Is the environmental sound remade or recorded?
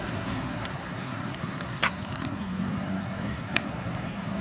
remade